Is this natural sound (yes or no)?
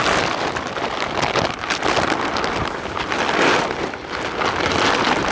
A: yes